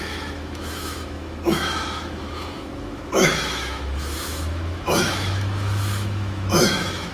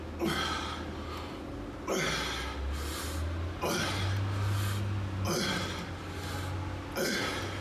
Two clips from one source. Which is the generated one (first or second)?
first